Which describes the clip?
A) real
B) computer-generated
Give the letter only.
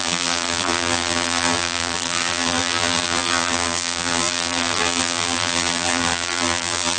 B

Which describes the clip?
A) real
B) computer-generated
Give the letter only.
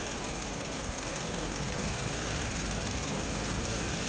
B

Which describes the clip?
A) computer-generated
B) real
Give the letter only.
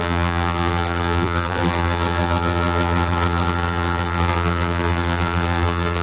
A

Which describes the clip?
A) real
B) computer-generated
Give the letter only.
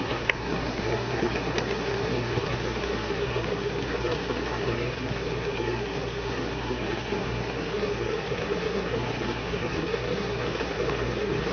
B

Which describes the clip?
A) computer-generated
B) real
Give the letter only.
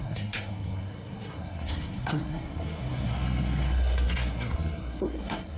A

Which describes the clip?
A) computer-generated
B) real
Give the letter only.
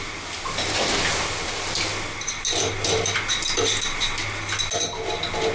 B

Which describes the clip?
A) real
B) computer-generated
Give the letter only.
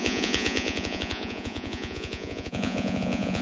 B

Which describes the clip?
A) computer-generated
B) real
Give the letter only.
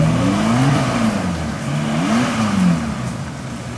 B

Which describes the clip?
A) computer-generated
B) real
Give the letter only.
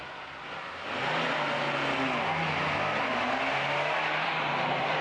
B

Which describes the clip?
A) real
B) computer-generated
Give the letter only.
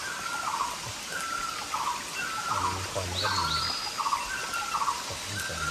A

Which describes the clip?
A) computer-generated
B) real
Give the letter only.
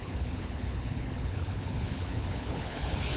A